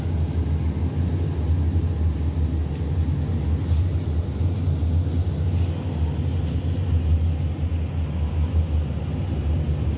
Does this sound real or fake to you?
real